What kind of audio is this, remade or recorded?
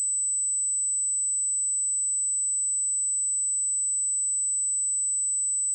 remade